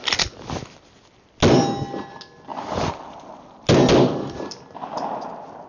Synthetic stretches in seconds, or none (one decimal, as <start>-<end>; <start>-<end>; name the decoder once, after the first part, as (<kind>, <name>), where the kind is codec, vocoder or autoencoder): none